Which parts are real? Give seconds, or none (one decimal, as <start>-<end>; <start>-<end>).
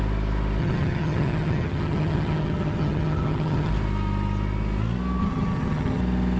0.0-0.6; 3.7-5.2; 6.0-6.4